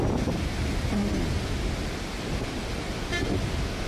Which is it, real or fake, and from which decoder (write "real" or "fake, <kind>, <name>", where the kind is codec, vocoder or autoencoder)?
real